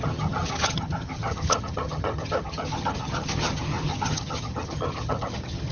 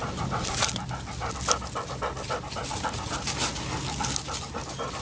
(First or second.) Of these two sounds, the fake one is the first